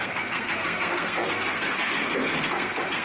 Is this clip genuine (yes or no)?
no